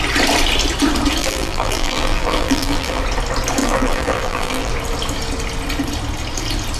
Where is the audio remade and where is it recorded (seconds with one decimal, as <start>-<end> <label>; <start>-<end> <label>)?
0.0-1.2 recorded; 1.2-3.0 remade; 3.0-3.6 recorded; 3.6-4.7 remade; 4.7-6.8 recorded